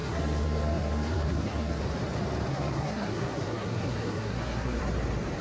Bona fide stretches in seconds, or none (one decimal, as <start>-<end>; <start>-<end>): 1.8-2.5; 4.8-5.4